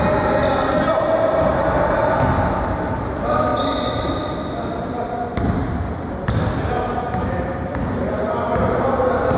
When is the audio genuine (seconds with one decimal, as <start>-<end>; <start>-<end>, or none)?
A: 0.0-9.4